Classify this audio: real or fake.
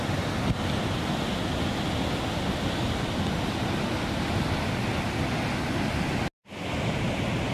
real